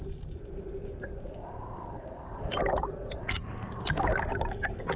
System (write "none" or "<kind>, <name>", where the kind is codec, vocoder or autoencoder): none